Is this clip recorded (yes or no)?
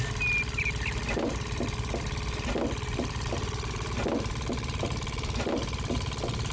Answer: yes